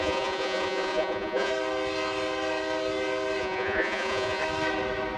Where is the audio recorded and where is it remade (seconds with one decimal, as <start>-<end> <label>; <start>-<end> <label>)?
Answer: 0.0-1.5 remade; 1.5-3.4 recorded; 3.4-4.4 remade; 4.4-5.2 recorded